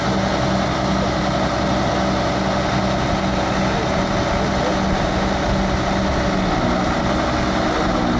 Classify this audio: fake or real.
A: real